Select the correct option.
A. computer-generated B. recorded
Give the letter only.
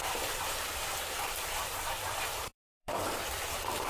A